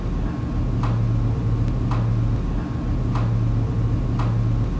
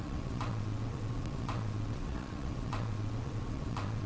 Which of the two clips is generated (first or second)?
second